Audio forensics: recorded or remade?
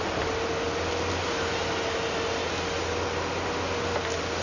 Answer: recorded